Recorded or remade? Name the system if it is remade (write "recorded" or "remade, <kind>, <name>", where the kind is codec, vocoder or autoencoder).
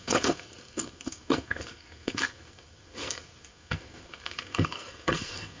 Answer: remade, codec, SNAC